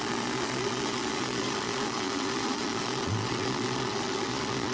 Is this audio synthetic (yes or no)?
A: yes